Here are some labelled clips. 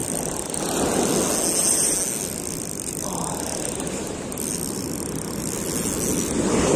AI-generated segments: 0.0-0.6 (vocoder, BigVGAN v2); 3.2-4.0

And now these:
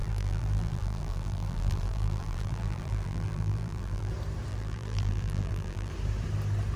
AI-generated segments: 0.0-4.1 (vocoder, BigVGAN v2); 4.5-5.9

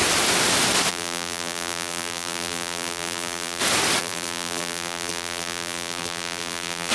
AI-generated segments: 0.9-3.6 (vocoder, BigVGAN v2); 4.0-6.9

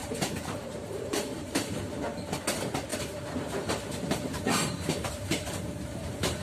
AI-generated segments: 0.0-1.8 (vocoder, BigVGAN v2); 2.9-6.4

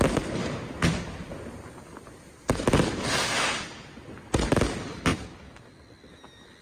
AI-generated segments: none

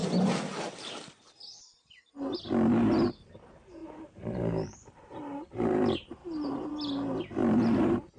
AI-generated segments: 3.8-6.7 (vocoder, BigVGAN v2); 7.4-8.2

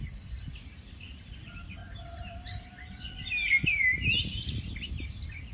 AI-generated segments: 0.0-1.8 (vocoder, BigVGAN v2); 4.5-5.5

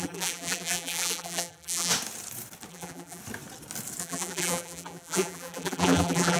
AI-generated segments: 0.0-1.9 (vocoder, BigVGAN v2); 2.7-3.2; 4.0-6.4